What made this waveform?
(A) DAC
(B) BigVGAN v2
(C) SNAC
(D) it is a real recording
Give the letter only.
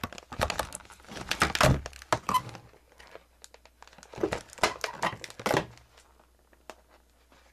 D